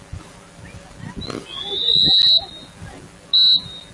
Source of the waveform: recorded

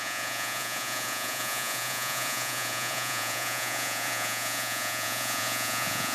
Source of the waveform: remade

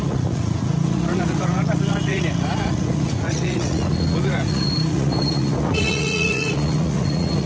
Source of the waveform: remade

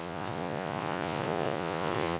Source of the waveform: remade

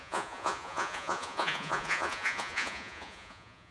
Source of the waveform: remade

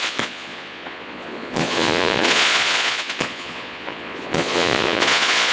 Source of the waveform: remade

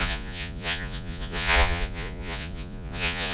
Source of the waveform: remade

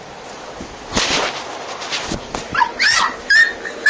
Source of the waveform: recorded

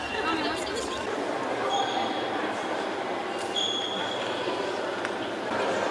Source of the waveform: recorded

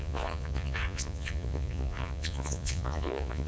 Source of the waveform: remade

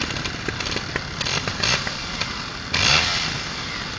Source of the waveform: recorded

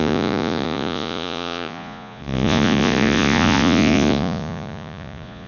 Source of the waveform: remade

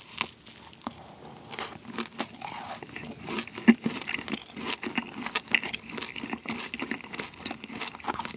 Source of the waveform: recorded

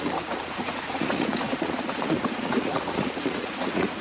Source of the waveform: remade